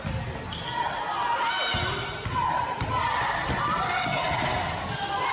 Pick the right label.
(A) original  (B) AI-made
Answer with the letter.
A